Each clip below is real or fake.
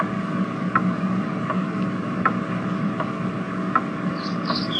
fake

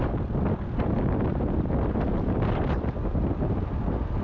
real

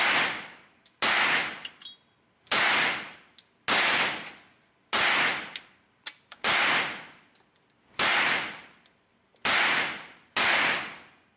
real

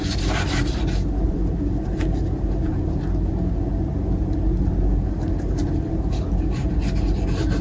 real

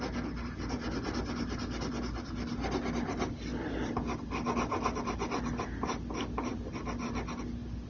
real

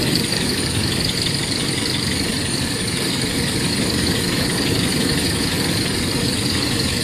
fake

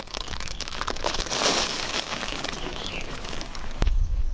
fake